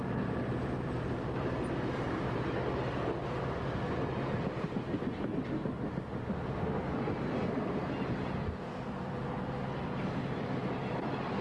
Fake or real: real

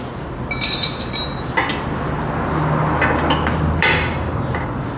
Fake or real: real